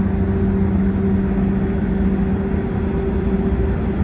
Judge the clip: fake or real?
real